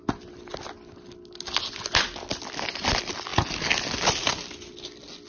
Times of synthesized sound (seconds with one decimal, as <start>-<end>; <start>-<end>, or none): none